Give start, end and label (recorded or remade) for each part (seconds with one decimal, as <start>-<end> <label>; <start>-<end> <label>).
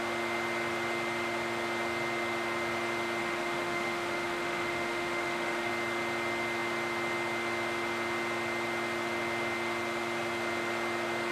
0.0-3.2 recorded; 3.2-5.7 remade; 5.7-11.3 recorded